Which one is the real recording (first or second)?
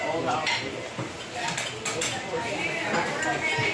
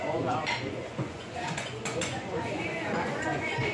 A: first